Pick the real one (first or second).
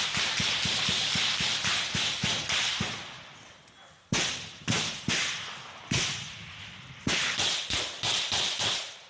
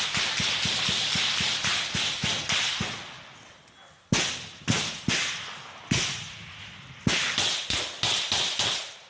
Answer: second